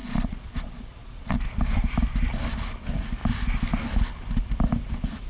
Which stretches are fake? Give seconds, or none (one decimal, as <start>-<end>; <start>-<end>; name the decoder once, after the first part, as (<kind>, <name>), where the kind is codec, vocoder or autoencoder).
0.0-1.4 (vocoder, Vocos)